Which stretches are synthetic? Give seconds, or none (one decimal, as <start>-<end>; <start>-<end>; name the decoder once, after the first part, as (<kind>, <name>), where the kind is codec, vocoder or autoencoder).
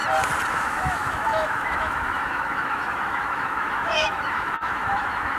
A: 0.5-5.4 (autoencoder, DAC-VAE)